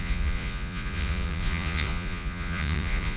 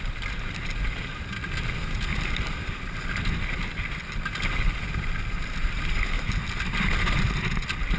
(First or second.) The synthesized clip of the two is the first